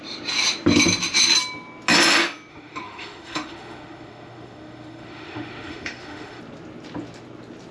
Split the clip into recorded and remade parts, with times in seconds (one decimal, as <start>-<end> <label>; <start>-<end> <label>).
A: 0.0-2.5 recorded; 2.5-6.4 remade; 6.4-7.7 recorded